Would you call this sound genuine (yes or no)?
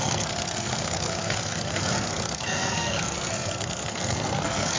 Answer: no